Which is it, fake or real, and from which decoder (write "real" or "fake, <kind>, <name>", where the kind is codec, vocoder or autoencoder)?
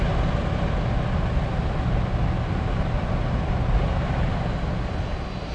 real